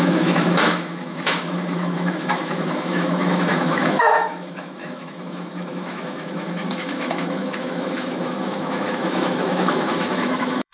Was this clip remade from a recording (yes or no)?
yes